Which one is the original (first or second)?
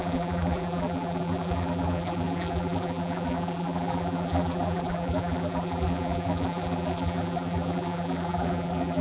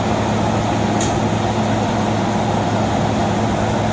second